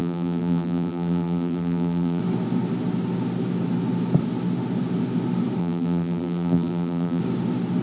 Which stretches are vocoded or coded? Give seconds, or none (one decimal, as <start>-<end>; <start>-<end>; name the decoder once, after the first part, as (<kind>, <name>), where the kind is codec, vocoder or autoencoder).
0.0-2.2 (vocoder, BigVGAN v2); 5.6-7.2